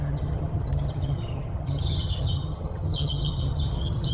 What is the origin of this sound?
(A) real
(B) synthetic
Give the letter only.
B